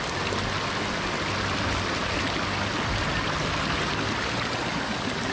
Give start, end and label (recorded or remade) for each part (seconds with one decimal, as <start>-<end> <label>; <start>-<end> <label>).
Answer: 0.0-5.3 recorded